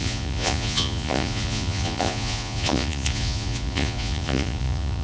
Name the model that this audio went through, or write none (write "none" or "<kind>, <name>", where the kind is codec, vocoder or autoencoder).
vocoder, Vocos